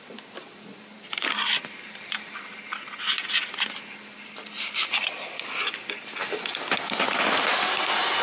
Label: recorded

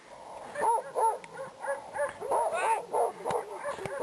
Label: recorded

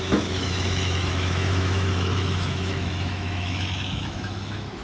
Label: remade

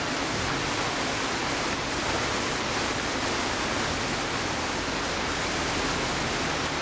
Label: recorded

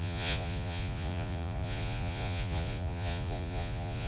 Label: remade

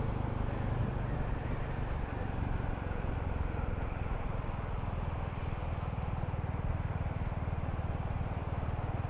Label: recorded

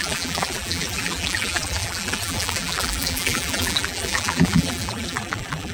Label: remade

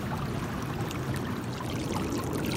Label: recorded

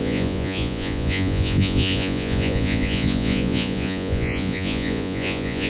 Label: remade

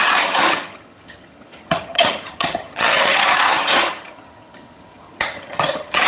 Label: remade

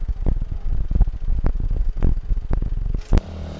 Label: recorded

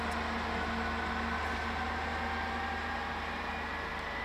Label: recorded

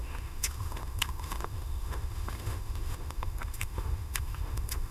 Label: remade